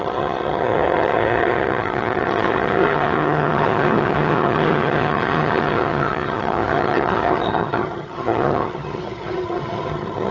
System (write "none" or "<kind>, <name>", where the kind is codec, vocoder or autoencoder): vocoder, HiFi-GAN